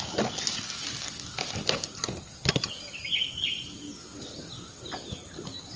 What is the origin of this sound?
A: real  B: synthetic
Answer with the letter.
A